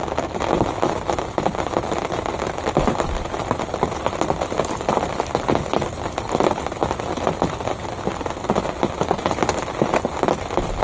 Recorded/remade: recorded